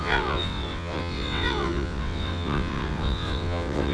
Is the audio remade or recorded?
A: remade